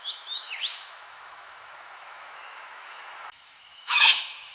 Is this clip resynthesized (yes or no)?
yes